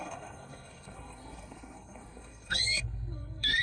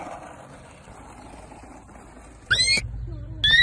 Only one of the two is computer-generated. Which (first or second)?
first